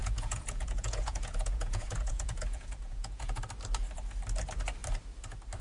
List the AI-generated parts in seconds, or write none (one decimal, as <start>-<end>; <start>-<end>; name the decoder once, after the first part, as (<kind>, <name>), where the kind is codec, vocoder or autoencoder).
0.0-3.4 (vocoder, Vocos)